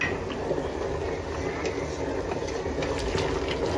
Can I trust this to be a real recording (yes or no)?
yes